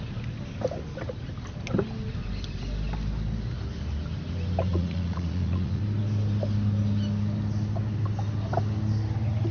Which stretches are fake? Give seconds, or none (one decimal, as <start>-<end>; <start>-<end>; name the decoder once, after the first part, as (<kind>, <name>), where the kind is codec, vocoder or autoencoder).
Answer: 4.7-5.8 (vocoder, Vocos)